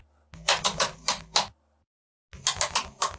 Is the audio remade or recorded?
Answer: recorded